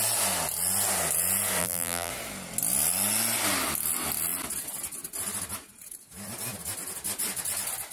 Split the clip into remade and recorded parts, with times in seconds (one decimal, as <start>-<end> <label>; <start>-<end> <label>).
0.0-1.6 recorded; 1.6-2.1 remade; 2.1-7.9 recorded